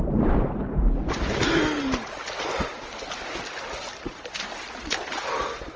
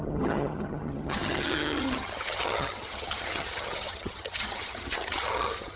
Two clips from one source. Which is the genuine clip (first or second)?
first